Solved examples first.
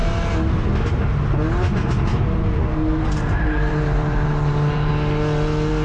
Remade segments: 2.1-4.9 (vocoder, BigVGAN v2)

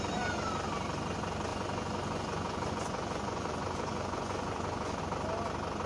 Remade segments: 1.5-5.0 (vocoder, Vocos)

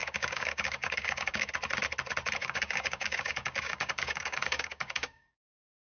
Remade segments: 0.0-1.5 (codec, DAC); 2.4-6.0

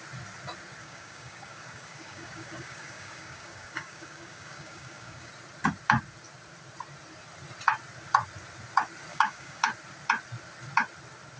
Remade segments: 0.8-5.3 (codec, DAC); 9.1-9.6

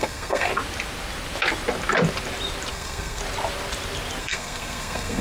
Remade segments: 0.0-0.5 (codec, SNAC); 2.7-3.2; 4.2-5.2